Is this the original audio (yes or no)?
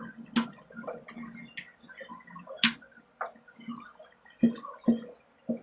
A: yes